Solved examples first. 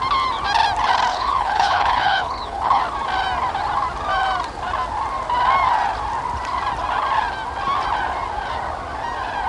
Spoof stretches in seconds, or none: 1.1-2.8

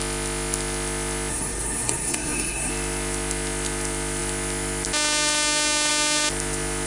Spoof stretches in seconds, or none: 1.3-2.7

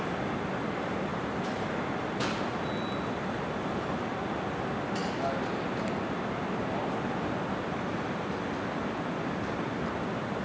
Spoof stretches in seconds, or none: none

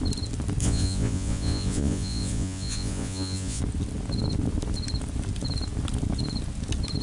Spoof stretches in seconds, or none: 0.6-3.6